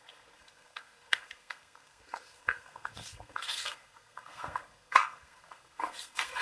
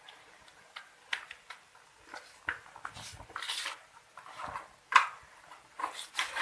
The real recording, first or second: second